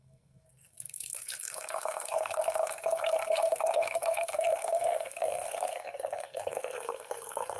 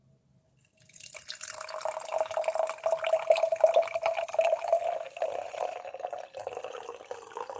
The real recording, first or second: second